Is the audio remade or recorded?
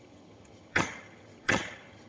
remade